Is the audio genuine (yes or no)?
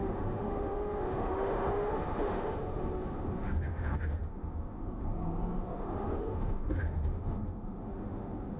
no